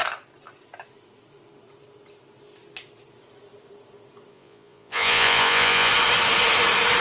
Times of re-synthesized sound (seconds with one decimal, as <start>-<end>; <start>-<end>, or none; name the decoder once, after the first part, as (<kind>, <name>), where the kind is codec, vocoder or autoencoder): 4.3-5.9 (vocoder, Vocos)